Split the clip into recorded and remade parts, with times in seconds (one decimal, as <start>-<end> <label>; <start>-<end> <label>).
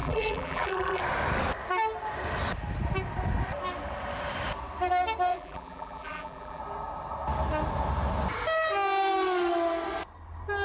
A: 0.0-1.0 remade; 1.0-5.3 recorded; 5.3-6.6 remade; 6.6-10.6 recorded